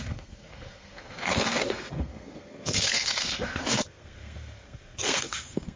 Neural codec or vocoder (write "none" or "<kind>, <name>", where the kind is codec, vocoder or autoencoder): codec, SNAC